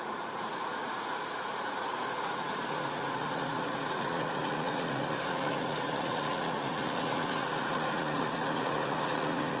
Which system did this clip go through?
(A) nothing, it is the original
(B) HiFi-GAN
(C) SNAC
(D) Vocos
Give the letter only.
D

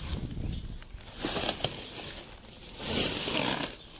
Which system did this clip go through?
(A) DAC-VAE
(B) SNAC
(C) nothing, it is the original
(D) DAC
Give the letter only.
C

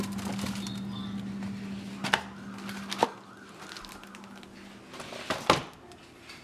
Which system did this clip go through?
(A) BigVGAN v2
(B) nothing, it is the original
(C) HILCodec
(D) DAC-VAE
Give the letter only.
B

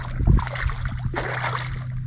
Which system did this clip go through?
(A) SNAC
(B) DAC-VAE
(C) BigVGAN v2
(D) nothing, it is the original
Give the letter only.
D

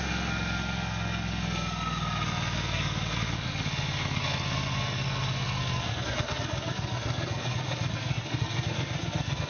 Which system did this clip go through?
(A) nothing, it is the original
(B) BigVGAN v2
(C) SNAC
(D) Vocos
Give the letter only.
C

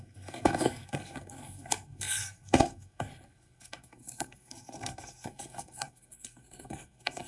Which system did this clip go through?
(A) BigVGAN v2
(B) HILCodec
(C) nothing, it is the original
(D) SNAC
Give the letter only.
D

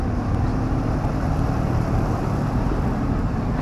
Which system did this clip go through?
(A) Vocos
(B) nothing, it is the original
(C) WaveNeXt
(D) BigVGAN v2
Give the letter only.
B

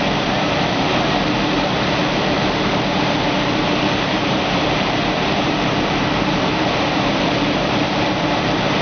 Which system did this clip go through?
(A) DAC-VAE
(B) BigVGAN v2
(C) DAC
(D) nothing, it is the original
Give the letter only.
B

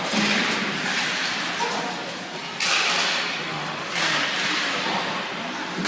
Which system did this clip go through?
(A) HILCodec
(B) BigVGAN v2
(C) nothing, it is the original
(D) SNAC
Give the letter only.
C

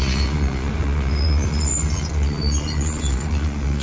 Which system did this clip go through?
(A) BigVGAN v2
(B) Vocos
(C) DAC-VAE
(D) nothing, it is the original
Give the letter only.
B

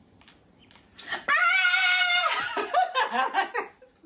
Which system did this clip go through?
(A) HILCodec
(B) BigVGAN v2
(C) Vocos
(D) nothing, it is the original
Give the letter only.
B